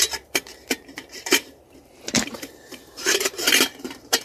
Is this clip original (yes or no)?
no